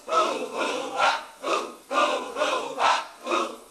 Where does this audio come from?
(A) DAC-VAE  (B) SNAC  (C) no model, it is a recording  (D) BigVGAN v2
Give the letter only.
B